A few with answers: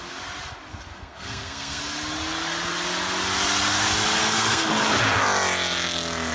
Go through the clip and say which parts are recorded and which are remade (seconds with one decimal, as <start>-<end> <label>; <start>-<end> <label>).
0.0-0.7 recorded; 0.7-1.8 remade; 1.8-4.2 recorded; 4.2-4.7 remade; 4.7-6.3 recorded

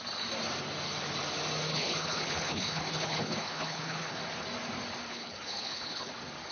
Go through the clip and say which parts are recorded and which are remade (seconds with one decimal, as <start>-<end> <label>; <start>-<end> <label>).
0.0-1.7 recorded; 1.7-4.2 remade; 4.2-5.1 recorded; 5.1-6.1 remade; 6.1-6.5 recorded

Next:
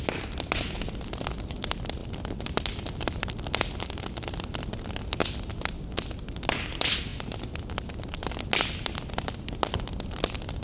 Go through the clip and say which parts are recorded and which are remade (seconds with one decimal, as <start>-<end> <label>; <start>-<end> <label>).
0.0-10.6 recorded